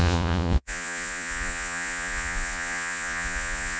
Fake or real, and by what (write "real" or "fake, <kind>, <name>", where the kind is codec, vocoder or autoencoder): fake, vocoder, Vocos